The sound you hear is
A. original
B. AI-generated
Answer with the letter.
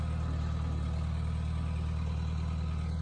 A